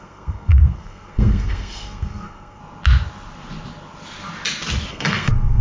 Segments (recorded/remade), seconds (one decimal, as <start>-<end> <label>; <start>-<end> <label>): 0.0-2.6 remade; 2.6-4.9 recorded; 4.9-5.6 remade